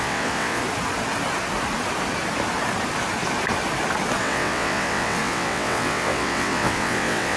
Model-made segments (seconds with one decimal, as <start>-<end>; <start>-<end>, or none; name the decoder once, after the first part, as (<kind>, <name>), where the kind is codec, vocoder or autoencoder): 0.0-0.6 (vocoder, WaveNeXt); 4.2-7.4